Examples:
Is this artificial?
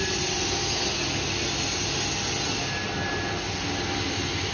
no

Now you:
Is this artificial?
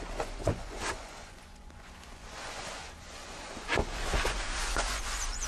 yes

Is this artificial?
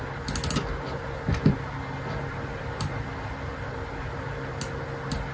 no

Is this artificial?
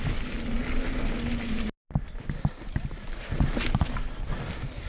no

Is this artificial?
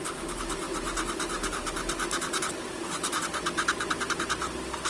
no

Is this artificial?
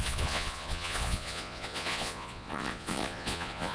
yes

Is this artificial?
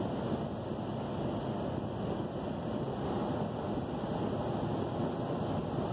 no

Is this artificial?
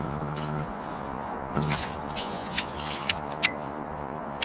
yes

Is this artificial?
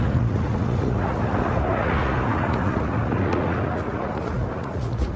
yes